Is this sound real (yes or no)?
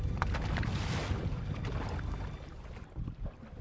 yes